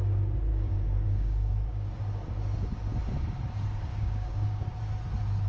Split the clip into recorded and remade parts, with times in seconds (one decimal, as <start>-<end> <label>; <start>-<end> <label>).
0.0-0.5 recorded; 0.5-1.9 remade; 1.9-3.9 recorded; 3.9-4.8 remade; 4.8-5.5 recorded